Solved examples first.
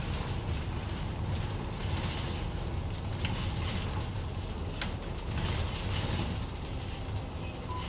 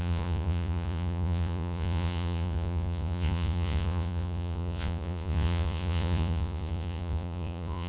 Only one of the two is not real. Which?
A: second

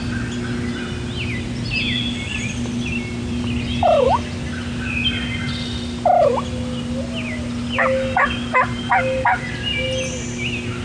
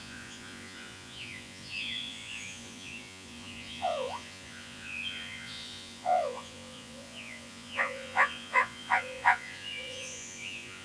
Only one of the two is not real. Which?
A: second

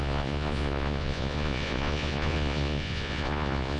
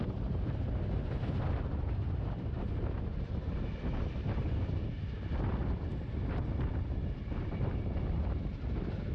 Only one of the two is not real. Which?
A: first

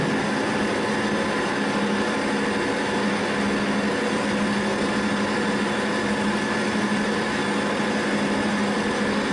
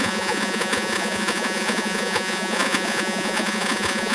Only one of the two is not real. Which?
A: second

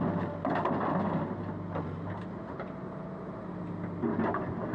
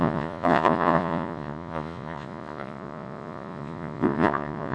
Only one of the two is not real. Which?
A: second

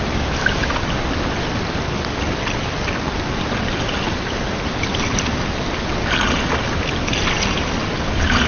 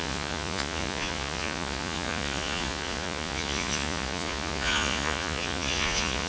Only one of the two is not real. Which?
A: second